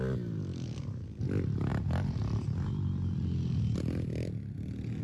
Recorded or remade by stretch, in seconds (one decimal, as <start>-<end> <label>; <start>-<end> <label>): 0.0-5.0 recorded